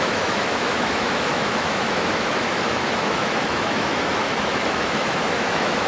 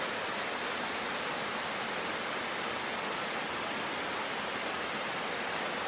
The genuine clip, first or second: second